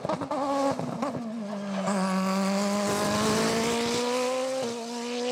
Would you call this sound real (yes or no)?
yes